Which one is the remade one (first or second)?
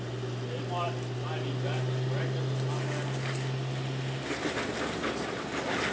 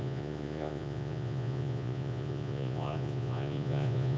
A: second